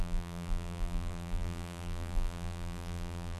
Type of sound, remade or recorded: remade